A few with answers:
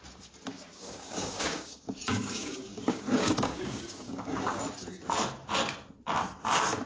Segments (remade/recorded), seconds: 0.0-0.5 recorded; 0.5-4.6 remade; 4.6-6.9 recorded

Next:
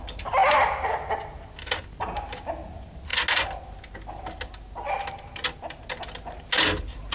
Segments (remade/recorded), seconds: 0.0-7.1 recorded

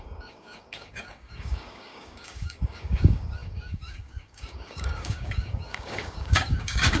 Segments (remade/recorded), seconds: 0.0-7.0 remade

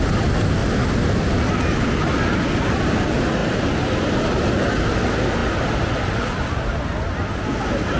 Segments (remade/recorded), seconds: 0.0-8.0 recorded

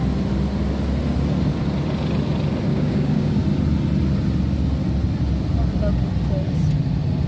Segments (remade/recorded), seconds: 0.0-2.7 recorded; 2.7-3.3 remade; 3.3-7.3 recorded

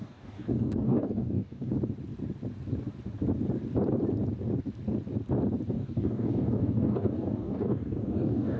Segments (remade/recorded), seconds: 0.0-1.7 remade; 1.7-5.7 recorded; 5.7-8.6 remade